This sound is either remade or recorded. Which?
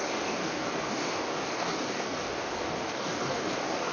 remade